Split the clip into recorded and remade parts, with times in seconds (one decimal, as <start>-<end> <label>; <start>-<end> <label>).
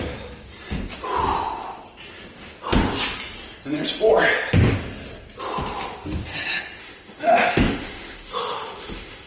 0.0-6.8 recorded; 6.8-9.3 remade